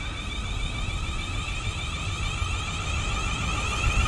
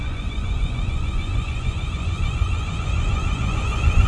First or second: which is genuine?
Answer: first